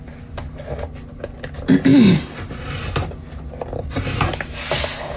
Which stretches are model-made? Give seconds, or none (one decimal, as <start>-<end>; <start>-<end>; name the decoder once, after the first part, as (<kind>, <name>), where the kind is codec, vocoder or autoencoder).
none